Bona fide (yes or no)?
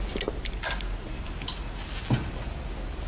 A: yes